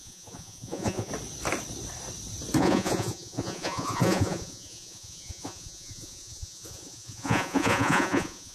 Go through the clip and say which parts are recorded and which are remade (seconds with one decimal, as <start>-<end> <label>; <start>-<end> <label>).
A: 0.0-1.1 remade; 1.1-2.6 recorded; 2.6-8.5 remade